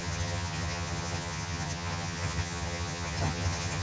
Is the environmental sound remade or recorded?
remade